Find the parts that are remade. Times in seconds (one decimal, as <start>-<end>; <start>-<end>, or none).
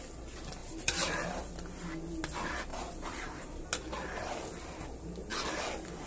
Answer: 0.6-1.4; 2.7-3.7